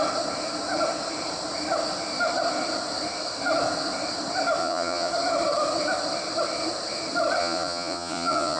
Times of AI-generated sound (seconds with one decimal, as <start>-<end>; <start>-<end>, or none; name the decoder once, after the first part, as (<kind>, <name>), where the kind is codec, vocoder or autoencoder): 4.6-5.1 (vocoder, Vocos); 7.4-8.6